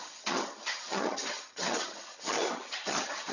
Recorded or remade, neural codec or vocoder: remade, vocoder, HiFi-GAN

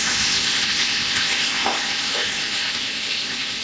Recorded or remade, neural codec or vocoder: remade, codec, ZipCodec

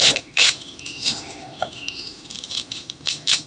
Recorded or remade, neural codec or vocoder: remade, autoencoder, DAC-VAE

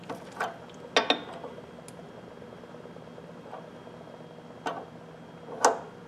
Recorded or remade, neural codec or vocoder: recorded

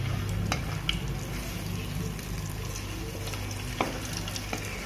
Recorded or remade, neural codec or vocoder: recorded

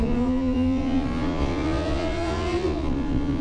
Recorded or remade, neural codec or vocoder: remade, vocoder, Vocos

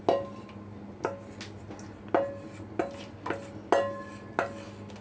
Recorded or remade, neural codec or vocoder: recorded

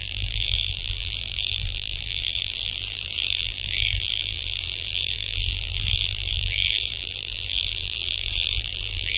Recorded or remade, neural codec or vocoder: remade, vocoder, BigVGAN v2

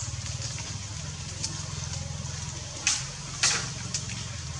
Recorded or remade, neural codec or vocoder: recorded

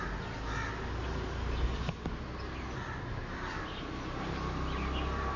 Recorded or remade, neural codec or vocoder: recorded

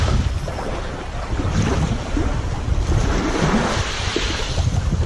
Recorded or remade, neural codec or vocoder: recorded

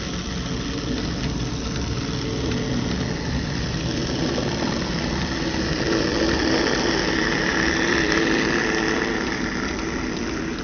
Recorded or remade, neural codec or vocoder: recorded